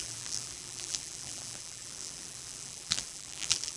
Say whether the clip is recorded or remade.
remade